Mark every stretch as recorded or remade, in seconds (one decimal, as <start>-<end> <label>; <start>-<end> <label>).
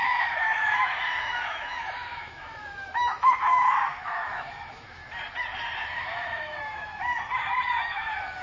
0.0-5.0 remade; 5.0-5.8 recorded; 5.8-7.1 remade; 7.1-7.9 recorded; 7.9-8.4 remade